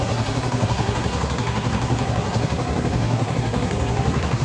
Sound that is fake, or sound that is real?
fake